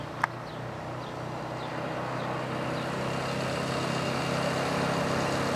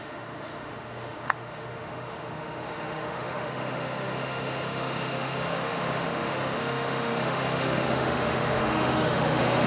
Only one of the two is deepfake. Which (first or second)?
second